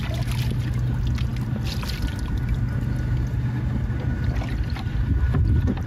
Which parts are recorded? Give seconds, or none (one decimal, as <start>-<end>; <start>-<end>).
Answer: 0.0-5.9